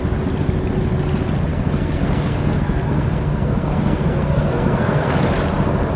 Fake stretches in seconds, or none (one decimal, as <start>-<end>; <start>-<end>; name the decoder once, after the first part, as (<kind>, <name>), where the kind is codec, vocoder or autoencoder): 1.5-5.1 (codec, SNAC)

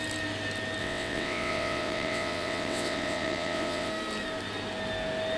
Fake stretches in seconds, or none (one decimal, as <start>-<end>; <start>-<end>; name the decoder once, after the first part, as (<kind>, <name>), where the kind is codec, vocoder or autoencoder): 0.8-3.9 (vocoder, WaveNeXt)

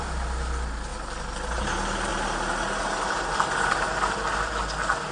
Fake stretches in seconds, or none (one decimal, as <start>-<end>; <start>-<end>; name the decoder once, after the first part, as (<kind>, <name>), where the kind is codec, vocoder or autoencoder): none

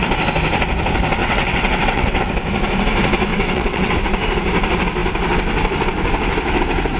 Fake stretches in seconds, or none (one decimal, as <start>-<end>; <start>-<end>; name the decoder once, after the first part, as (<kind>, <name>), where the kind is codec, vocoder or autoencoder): 1.2-2.2 (vocoder, WaveNeXt); 3.3-4.0

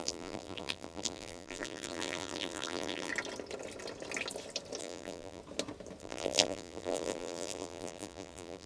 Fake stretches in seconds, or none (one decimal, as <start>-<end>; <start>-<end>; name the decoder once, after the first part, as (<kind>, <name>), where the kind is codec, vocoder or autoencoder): 0.0-3.1 (vocoder, BigVGAN v2); 4.8-5.4; 6.0-8.7